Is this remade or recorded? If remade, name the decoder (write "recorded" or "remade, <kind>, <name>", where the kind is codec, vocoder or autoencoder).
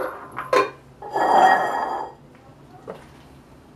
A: recorded